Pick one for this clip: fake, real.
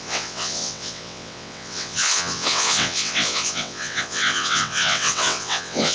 fake